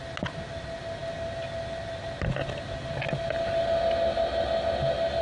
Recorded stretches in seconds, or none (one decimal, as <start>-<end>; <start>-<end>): 0.0-5.2